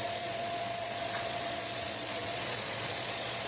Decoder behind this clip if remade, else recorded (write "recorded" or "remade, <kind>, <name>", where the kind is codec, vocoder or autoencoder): remade, vocoder, Vocos